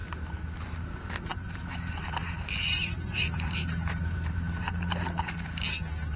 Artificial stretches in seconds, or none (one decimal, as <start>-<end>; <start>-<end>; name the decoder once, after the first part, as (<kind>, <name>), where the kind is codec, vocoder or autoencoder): 1.3-4.7 (vocoder, BigVGAN v2)